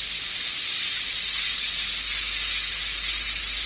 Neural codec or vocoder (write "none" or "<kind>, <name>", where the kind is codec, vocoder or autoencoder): none